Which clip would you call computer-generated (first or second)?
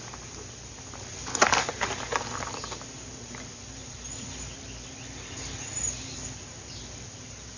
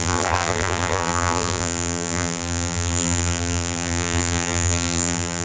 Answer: second